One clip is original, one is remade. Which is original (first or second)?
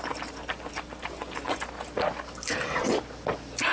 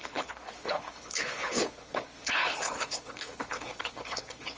first